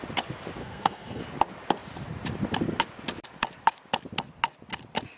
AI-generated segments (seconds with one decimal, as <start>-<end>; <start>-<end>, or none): 0.6-1.2